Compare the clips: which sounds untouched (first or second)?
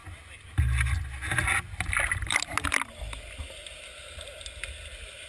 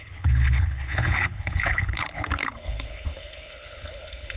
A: first